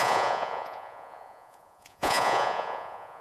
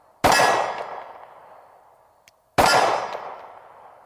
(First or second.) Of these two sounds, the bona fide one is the second